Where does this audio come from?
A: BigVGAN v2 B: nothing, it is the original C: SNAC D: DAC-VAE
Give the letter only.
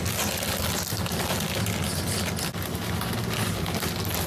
B